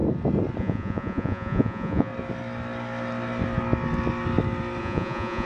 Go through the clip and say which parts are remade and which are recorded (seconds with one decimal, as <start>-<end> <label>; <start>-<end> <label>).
0.0-0.6 recorded; 0.6-2.1 remade; 2.1-4.8 recorded; 4.8-5.5 remade